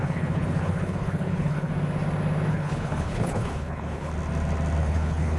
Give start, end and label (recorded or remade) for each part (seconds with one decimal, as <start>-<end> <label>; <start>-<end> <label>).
0.0-1.7 remade; 1.7-2.5 recorded; 2.5-4.1 remade; 4.1-4.8 recorded; 4.8-5.4 remade